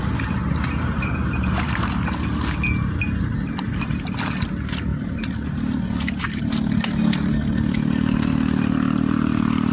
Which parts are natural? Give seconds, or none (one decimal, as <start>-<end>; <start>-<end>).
0.0-0.4; 1.8-9.7